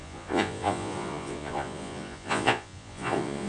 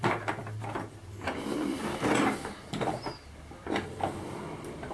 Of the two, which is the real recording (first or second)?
second